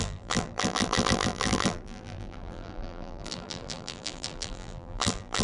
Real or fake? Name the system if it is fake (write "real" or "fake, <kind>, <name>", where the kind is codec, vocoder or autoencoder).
fake, vocoder, BigVGAN v2